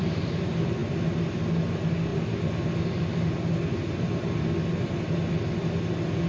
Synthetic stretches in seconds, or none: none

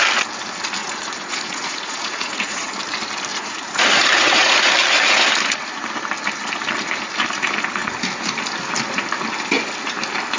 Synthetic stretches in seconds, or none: 0.8-2.7 (vocoder, Vocos); 3.3-4.7

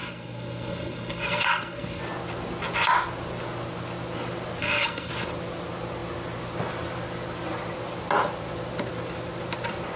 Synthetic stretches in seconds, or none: 0.0-2.0 (codec, SNAC); 4.6-5.1